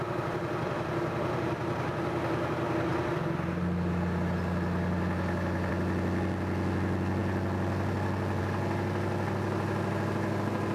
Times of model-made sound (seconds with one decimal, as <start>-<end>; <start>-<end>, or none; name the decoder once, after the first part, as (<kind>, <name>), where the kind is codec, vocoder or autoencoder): none